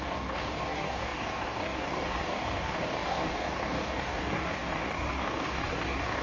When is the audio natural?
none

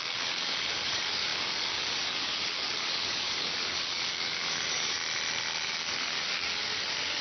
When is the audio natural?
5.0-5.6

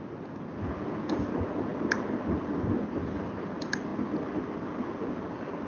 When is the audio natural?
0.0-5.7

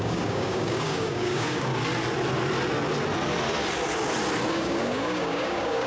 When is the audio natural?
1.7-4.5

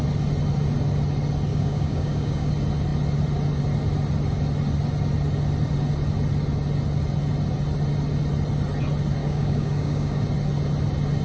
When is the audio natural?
0.0-1.5; 2.5-9.2; 10.2-11.2

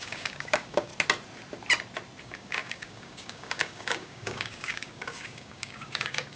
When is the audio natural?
0.9-2.2

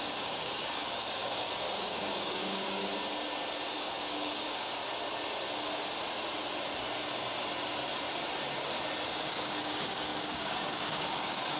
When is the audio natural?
2.8-3.8; 4.8-9.1

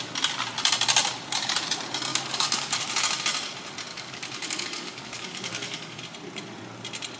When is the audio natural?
0.0-2.1; 2.8-3.9; 6.0-7.2